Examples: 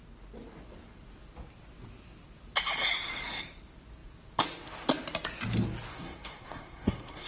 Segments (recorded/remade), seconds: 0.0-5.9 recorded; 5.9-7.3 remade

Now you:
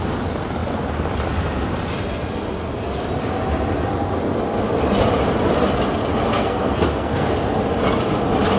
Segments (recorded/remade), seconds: 0.0-6.1 recorded; 6.1-7.3 remade; 7.3-8.6 recorded

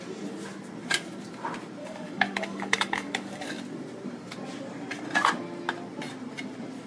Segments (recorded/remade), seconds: 0.0-1.8 recorded; 1.8-3.6 remade; 3.6-6.9 recorded

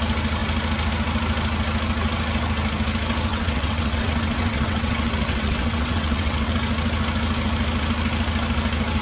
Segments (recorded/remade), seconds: 0.0-3.3 recorded; 3.3-6.5 remade; 6.5-9.0 recorded

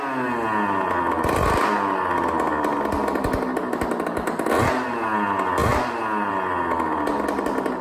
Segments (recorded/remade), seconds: 0.0-7.8 recorded

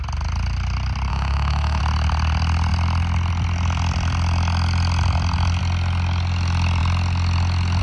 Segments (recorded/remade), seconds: 0.0-1.1 recorded; 1.1-1.8 remade; 1.8-7.8 recorded

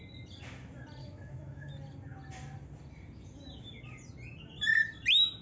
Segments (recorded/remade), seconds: 0.0-1.0 recorded; 1.0-1.7 remade; 1.7-5.4 recorded

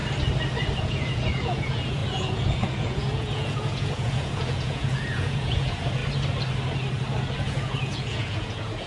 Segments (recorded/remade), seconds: 0.0-0.8 recorded; 0.8-6.0 remade; 6.0-7.2 recorded; 7.2-8.9 remade